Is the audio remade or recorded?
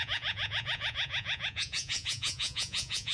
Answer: remade